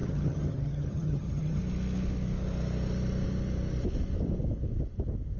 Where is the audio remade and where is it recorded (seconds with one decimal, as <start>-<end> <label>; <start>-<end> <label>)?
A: 0.0-1.6 remade; 1.6-5.4 recorded